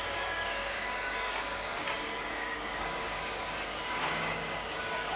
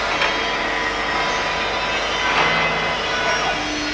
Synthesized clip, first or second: first